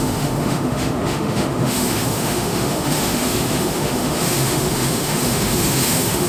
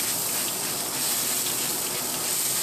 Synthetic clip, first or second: first